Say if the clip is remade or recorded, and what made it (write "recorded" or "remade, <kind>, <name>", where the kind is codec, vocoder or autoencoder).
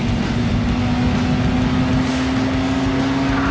recorded